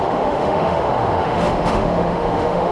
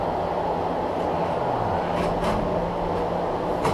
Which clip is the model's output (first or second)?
first